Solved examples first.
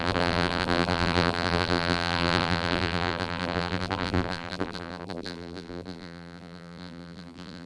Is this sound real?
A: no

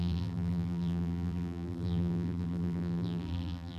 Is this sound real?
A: no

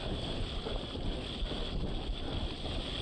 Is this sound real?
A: yes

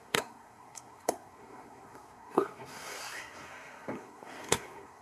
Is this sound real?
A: no